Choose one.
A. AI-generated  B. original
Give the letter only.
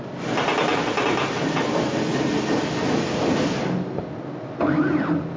B